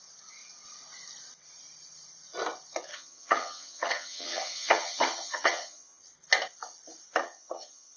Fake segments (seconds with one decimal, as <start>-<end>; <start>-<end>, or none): 2.9-6.0; 7.2-8.0